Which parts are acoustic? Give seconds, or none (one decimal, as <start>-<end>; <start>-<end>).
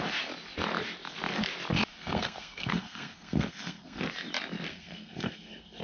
0.0-1.9; 4.0-4.7